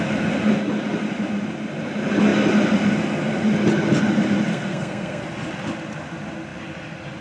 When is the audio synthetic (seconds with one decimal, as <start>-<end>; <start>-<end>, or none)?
4.5-5.2